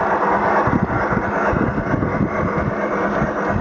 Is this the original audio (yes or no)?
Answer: yes